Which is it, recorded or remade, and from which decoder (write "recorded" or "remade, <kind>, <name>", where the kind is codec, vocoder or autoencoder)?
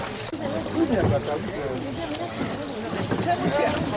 recorded